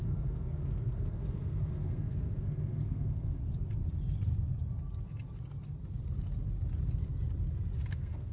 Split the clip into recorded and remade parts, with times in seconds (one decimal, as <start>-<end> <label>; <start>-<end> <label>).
0.0-3.4 remade; 3.4-7.9 recorded; 7.9-8.3 remade

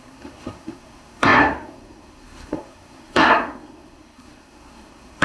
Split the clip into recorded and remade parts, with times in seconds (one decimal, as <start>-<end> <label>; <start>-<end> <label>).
0.0-5.2 remade

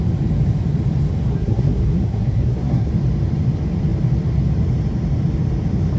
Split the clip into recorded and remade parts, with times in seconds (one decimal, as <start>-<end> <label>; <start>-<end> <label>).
0.0-1.3 recorded; 1.3-2.9 remade; 2.9-6.0 recorded

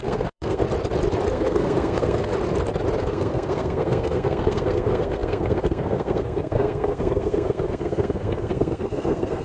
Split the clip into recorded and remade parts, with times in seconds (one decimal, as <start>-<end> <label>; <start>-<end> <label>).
0.0-0.6 remade; 0.6-1.3 recorded; 1.3-2.3 remade; 2.3-3.0 recorded; 3.0-9.4 remade

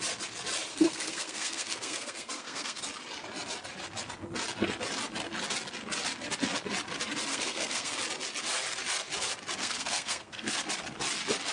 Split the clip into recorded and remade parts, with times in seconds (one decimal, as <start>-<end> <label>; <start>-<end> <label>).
0.0-0.7 recorded; 0.7-2.8 remade; 2.8-7.3 recorded; 7.3-8.0 remade; 8.0-9.6 recorded; 9.6-10.5 remade; 10.5-11.5 recorded